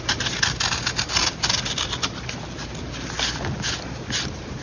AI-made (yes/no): no